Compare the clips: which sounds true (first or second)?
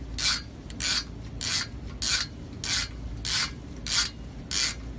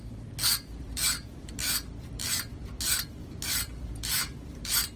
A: first